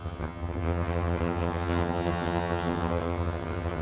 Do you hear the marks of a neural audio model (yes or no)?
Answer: yes